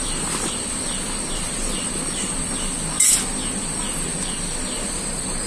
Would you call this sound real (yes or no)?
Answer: yes